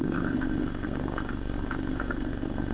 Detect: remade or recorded remade